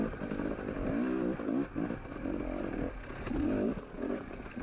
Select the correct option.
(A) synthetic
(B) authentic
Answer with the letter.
B